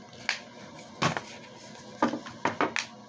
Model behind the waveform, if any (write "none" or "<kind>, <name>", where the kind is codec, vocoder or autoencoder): none